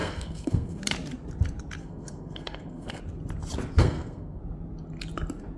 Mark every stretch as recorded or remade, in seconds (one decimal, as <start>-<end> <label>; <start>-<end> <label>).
0.0-0.8 remade; 0.8-1.8 recorded; 1.8-3.0 remade; 3.0-3.8 recorded; 3.8-4.4 remade; 4.4-5.6 recorded